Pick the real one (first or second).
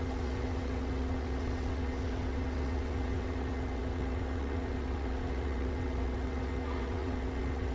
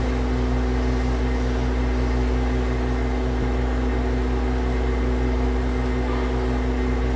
second